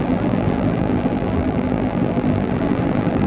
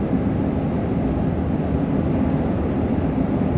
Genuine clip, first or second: second